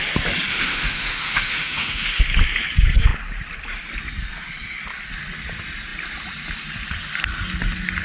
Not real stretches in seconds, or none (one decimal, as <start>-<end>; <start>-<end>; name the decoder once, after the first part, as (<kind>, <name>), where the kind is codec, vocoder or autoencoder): 0.5-2.2 (autoencoder, DAC-VAE)